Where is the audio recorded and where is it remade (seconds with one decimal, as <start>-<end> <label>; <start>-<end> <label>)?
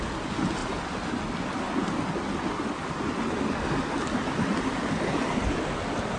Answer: 0.0-6.2 recorded